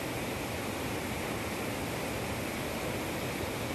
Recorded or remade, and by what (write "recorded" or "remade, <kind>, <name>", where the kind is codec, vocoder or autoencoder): recorded